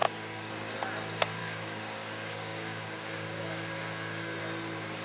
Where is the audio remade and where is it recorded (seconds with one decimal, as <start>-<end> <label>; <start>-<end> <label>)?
0.0-0.5 remade; 0.5-1.4 recorded; 1.4-4.4 remade; 4.4-5.0 recorded

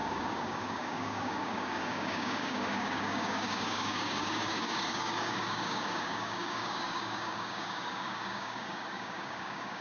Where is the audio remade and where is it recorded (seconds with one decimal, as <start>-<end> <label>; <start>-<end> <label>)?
0.0-9.8 remade

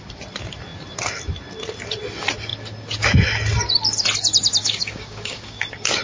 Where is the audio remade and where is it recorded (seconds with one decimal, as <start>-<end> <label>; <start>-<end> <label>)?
0.0-4.6 recorded; 4.6-6.0 remade

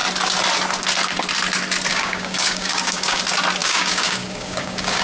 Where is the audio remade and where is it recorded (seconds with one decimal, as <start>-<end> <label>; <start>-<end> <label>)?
0.0-1.9 recorded; 1.9-3.2 remade; 3.2-3.6 recorded; 3.6-5.0 remade

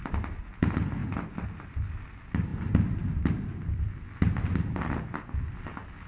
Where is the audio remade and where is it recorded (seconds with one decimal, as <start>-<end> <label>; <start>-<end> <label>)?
0.0-6.1 recorded

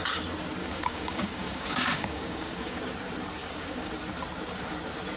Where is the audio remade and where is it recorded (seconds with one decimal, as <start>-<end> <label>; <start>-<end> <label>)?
0.0-0.6 recorded; 0.6-2.8 remade; 2.8-3.4 recorded; 3.4-3.9 remade; 3.9-5.2 recorded